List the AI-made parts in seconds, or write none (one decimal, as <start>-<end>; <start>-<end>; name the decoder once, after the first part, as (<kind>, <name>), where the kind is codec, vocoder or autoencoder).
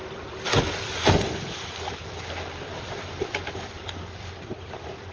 2.0-5.1 (vocoder, BigVGAN v2)